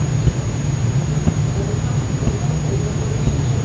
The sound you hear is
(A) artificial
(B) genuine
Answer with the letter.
B